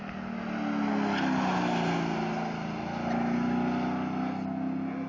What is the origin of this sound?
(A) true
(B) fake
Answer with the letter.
A